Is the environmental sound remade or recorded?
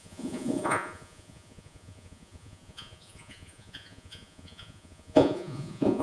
remade